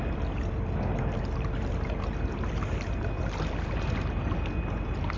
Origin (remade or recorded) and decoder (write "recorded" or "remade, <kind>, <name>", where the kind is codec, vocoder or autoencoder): recorded